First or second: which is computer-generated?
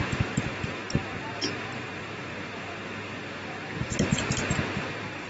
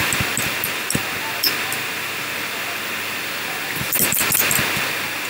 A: first